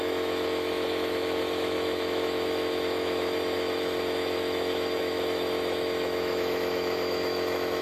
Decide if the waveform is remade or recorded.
remade